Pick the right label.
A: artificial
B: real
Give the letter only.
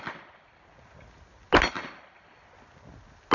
B